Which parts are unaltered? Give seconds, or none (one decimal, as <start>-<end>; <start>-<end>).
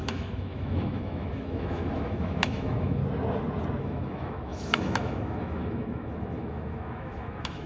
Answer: 3.0-3.8